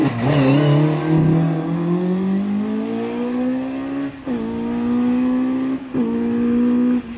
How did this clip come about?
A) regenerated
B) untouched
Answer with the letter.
B